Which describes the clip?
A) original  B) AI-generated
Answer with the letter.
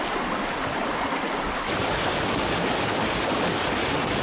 A